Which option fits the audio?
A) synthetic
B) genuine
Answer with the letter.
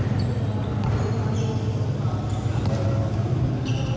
B